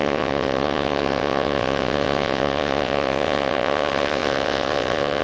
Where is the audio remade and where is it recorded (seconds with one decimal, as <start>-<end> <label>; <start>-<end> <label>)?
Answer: 0.0-5.2 remade